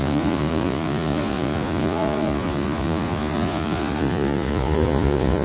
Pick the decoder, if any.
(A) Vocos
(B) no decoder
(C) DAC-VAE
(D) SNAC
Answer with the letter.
A